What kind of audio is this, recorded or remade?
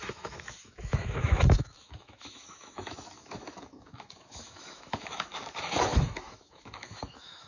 remade